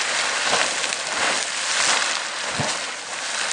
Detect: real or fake real